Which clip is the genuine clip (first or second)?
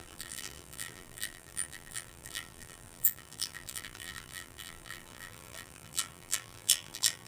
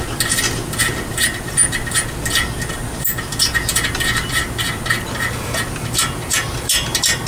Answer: second